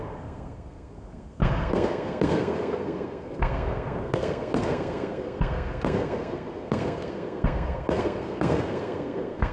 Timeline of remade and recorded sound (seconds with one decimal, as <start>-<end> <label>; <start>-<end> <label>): 0.0-9.5 remade